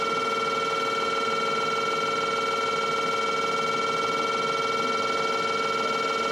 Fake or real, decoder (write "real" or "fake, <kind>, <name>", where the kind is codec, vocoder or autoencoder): real